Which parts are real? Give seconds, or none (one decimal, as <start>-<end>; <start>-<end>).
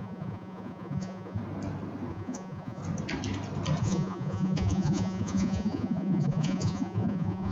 1.4-2.1; 2.8-3.8